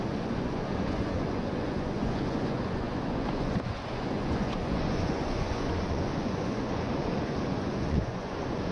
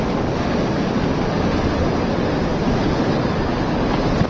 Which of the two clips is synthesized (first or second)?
first